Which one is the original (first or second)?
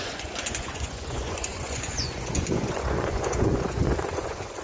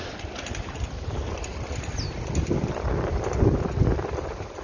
second